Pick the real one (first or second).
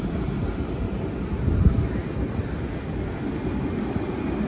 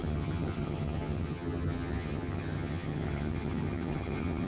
first